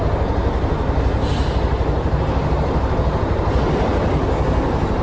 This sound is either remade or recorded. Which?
recorded